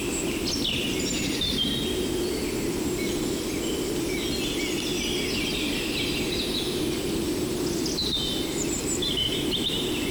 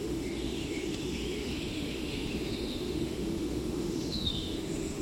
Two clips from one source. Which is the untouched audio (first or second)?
first